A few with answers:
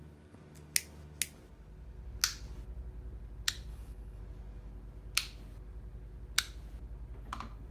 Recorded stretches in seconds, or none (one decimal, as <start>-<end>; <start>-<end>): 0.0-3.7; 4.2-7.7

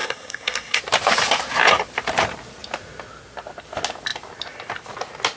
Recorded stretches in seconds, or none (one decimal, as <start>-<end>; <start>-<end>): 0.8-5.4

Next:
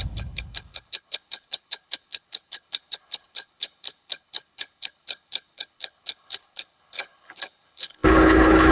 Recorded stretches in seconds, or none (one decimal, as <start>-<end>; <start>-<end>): none

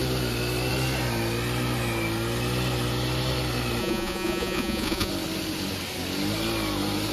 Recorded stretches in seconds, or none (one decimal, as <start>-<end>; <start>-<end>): 0.0-3.8; 5.1-7.1